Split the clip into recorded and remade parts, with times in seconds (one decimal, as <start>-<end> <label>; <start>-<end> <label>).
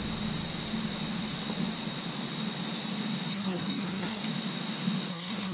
0.0-3.3 recorded; 3.3-4.2 remade; 4.2-5.1 recorded; 5.1-5.5 remade